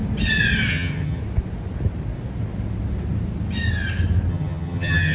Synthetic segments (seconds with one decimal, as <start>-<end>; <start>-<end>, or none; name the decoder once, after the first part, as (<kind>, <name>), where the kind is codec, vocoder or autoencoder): 0.7-1.2 (vocoder, HiFi-GAN); 4.3-5.1